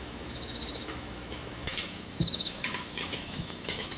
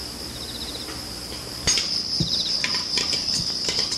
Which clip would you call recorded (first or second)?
second